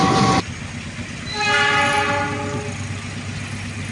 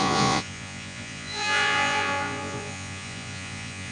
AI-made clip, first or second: second